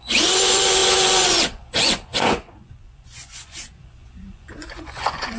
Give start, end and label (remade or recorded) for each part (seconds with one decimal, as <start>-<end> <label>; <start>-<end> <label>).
0.0-5.4 remade

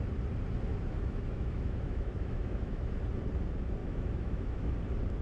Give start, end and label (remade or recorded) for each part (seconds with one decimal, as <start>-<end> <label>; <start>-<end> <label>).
0.0-0.7 recorded; 0.7-2.9 remade; 2.9-3.8 recorded; 3.8-4.7 remade; 4.7-5.2 recorded

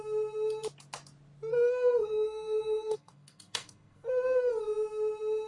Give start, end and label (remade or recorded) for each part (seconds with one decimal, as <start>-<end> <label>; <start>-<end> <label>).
0.0-1.5 recorded; 1.5-4.5 remade; 4.5-5.5 recorded

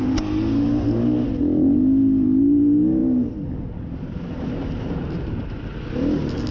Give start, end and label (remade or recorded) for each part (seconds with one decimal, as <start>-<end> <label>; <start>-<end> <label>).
0.0-6.5 recorded

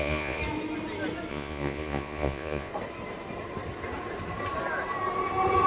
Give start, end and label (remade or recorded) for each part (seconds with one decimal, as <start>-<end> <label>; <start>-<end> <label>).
0.0-0.4 remade; 0.4-1.3 recorded; 1.3-2.7 remade; 2.7-5.7 recorded